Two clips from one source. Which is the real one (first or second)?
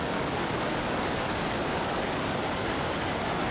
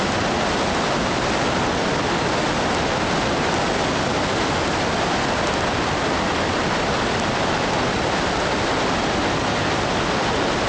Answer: second